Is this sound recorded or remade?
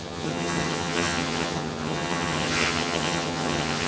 remade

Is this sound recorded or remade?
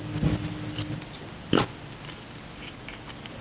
recorded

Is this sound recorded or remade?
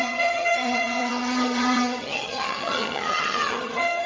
remade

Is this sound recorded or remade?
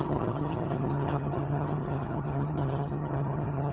remade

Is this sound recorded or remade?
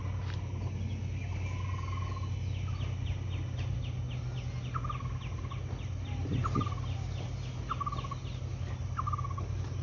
recorded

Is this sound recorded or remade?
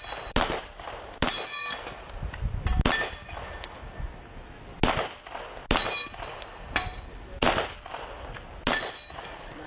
recorded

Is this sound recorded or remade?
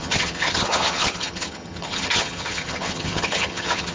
remade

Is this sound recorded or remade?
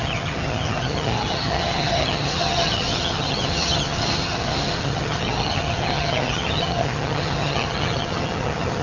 remade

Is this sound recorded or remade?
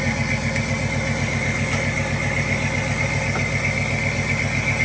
recorded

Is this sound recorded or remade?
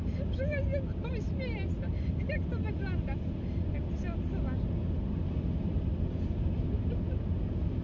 recorded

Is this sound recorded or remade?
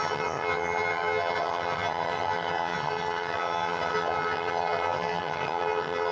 remade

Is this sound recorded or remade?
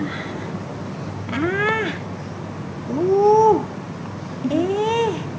recorded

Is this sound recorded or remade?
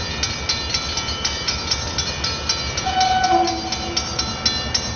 recorded